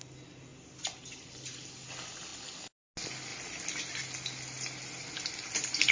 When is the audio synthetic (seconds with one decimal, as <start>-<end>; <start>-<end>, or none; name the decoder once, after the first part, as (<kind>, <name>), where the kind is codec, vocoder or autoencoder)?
none